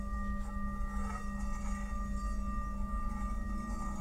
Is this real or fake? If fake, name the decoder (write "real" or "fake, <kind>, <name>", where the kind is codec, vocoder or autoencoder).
real